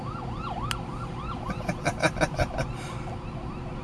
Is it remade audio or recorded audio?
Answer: recorded